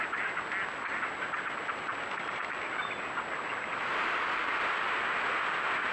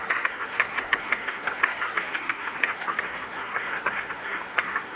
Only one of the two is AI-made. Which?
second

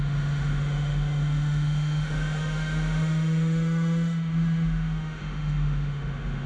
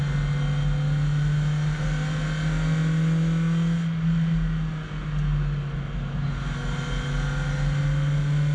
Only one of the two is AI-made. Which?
first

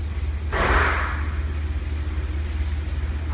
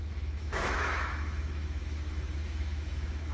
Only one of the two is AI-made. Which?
second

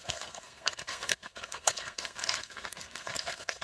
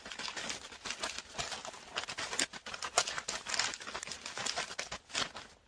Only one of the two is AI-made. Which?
first